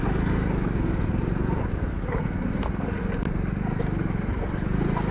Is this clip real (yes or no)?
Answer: yes